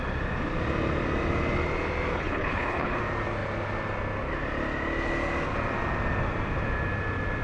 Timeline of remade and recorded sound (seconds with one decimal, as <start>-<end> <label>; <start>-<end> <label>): 0.0-2.1 recorded; 2.1-3.0 remade; 3.0-7.4 recorded